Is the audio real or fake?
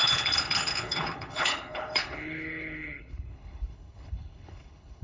fake